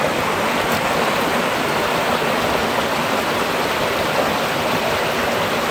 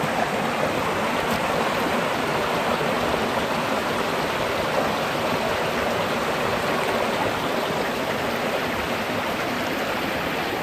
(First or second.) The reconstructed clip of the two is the first